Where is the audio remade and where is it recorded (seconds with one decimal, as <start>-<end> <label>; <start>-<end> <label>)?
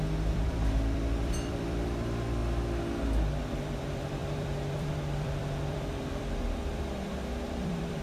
0.0-2.4 remade; 2.4-3.4 recorded; 3.4-8.0 remade